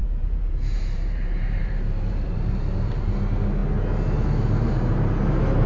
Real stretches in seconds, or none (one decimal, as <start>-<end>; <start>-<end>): 3.1-5.7

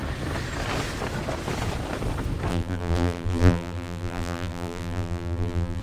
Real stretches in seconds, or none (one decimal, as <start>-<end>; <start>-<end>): 0.0-2.5

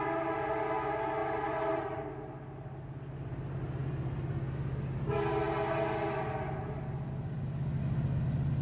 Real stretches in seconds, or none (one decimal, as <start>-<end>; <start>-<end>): 0.0-1.2; 2.0-8.6